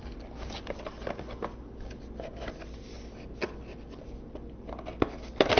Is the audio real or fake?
real